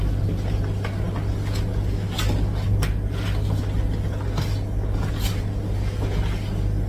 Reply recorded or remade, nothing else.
recorded